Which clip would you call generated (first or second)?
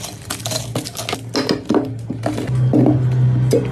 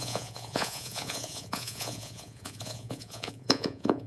second